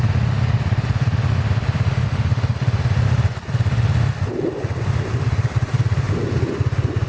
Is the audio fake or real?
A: real